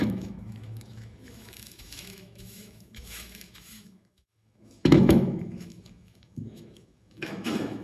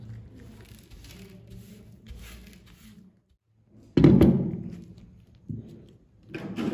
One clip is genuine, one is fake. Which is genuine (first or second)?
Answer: second